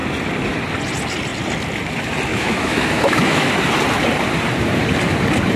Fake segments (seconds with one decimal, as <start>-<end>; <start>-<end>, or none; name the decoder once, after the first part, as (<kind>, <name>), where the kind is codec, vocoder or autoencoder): 2.3-3.5 (autoencoder, DAC-VAE)